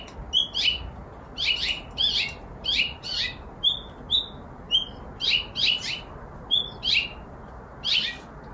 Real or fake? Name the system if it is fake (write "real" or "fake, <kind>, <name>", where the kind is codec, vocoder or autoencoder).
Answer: real